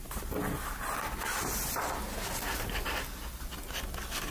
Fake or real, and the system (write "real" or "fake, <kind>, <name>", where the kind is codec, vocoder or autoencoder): real